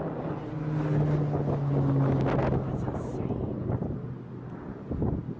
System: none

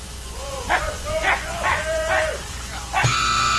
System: vocoder, Vocos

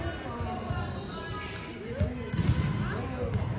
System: none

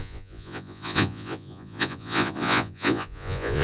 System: vocoder, Vocos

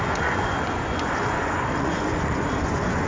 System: vocoder, Vocos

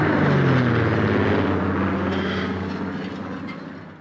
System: none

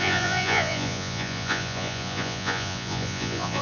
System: vocoder, Vocos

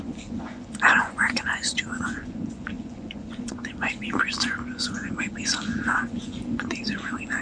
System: vocoder, Vocos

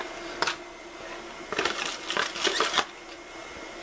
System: none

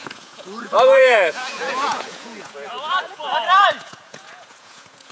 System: vocoder, Vocos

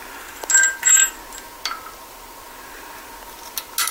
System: none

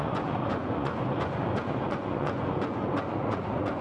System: vocoder, Vocos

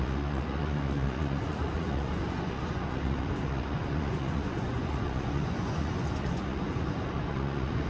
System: vocoder, Vocos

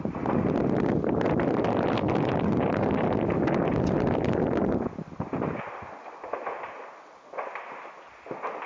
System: none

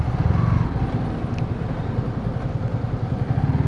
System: none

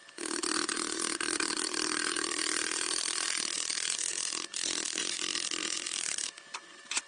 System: vocoder, Vocos